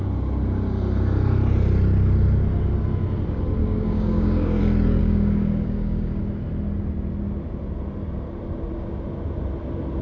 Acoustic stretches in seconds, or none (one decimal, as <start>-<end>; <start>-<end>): 0.0-3.6; 4.6-5.0; 6.2-10.0